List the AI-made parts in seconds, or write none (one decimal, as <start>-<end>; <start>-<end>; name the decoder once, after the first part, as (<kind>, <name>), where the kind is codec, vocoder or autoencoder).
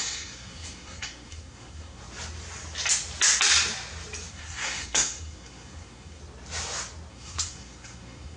0.0-2.0 (codec, SNAC); 4.3-6.2; 7.1-8.4